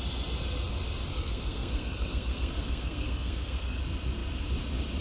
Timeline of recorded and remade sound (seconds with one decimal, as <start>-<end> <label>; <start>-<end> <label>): 0.0-1.1 recorded; 1.1-3.8 remade; 3.8-5.0 recorded